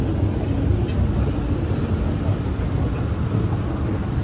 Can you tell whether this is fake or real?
real